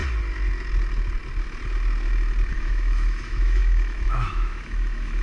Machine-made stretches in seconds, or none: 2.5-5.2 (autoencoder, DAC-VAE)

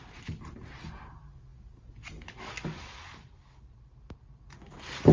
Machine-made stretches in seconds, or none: none